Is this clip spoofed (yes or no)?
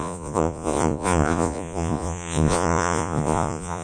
yes